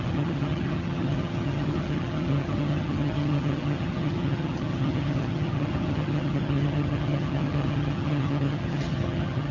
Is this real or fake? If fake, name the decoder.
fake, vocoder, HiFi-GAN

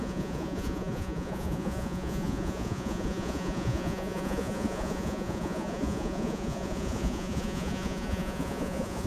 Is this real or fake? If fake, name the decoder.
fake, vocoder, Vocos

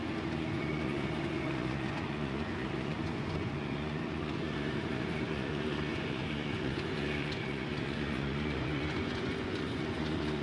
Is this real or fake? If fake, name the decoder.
fake, vocoder, Vocos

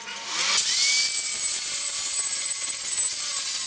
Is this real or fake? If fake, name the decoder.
real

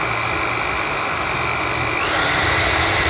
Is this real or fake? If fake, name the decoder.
real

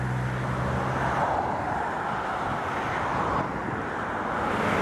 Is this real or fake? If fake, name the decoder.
real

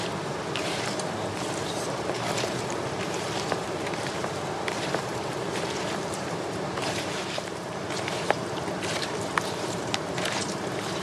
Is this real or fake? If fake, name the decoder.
fake, vocoder, BigVGAN v2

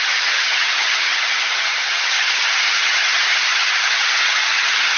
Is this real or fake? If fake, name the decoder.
fake, vocoder, HiFi-GAN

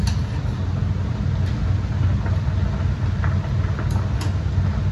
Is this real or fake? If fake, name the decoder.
real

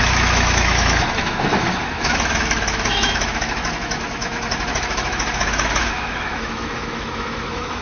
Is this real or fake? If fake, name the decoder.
fake, autoencoder, DAC-VAE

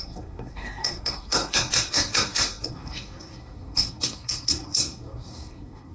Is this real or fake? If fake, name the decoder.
fake, codec, SNAC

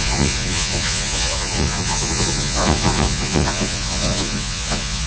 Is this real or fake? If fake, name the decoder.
fake, vocoder, Vocos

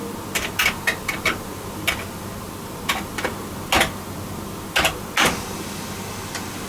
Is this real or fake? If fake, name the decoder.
real